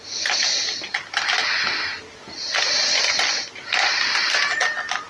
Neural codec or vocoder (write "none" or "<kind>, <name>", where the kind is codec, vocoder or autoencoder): none